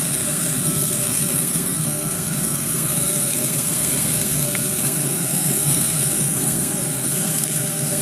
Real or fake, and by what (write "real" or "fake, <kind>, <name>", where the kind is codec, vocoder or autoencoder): fake, codec, SNAC